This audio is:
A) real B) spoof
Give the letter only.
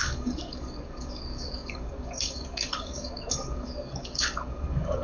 B